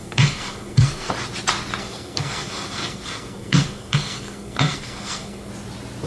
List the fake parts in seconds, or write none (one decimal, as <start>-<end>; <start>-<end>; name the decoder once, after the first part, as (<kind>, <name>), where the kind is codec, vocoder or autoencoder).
0.0-1.1 (codec, SNAC); 1.8-5.5